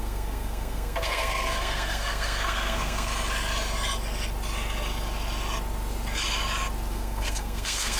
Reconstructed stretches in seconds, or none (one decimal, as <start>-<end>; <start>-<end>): 0.0-3.1; 6.9-8.0